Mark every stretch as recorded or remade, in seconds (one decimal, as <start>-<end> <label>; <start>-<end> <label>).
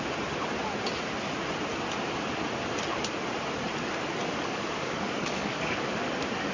0.0-4.2 recorded; 4.2-5.8 remade; 5.8-6.5 recorded